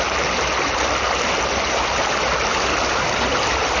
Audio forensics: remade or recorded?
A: recorded